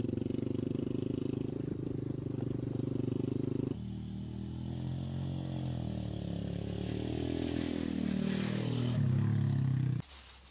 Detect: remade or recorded recorded